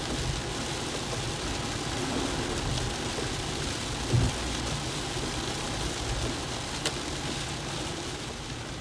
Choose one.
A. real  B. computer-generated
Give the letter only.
A